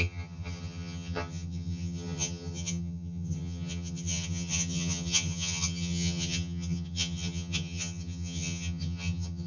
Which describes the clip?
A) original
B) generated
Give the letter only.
B